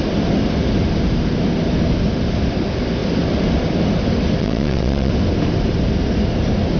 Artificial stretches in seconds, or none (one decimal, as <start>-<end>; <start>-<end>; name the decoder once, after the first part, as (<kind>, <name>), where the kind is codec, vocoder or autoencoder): 4.4-5.1 (vocoder, WaveNeXt)